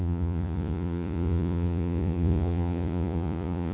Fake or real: fake